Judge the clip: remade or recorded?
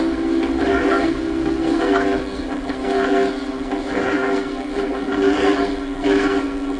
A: remade